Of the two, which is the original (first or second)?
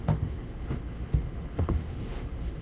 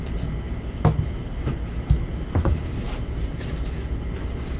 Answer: second